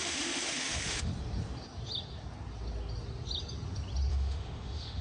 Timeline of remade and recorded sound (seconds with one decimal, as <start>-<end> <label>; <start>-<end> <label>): 0.0-1.1 remade; 1.1-4.1 recorded; 4.1-5.0 remade